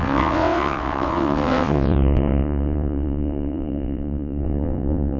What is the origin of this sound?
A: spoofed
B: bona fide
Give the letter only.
A